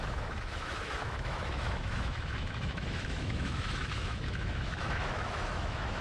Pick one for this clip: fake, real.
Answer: fake